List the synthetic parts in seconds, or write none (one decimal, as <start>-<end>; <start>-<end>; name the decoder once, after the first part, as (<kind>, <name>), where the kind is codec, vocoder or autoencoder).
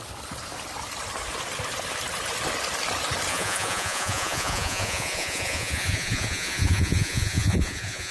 3.3-8.1 (vocoder, Vocos)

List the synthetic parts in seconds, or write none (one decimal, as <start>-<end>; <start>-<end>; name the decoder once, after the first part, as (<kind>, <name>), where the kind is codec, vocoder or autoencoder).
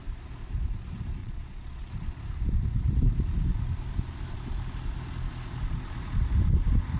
1.2-1.9 (vocoder, Vocos)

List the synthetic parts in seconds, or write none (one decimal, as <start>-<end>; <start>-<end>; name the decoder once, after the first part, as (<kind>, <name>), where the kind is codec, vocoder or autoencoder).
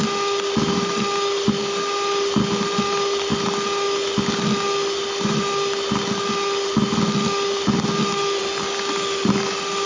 none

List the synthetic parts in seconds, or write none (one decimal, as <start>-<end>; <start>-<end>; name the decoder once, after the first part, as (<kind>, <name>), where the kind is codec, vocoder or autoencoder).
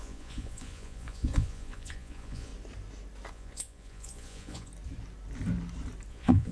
0.0-2.5 (vocoder, Vocos); 3.3-4.7; 6.1-6.5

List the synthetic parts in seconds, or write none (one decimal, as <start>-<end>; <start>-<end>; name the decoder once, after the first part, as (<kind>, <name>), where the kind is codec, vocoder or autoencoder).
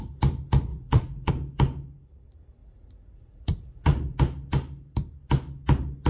0.7-1.3 (vocoder, Vocos); 2.6-4.2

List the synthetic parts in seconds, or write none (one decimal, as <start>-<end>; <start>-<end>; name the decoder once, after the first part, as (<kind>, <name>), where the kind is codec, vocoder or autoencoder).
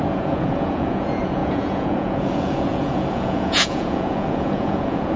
0.0-5.2 (vocoder, Vocos)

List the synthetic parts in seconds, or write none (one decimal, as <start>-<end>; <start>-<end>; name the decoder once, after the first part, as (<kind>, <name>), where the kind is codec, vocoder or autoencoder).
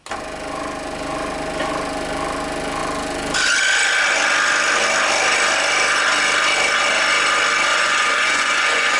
7.7-9.0 (vocoder, Vocos)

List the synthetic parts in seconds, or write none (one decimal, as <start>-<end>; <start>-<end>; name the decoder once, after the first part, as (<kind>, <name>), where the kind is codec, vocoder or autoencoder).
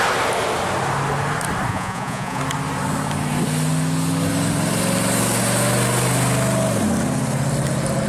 1.7-2.4 (vocoder, Vocos)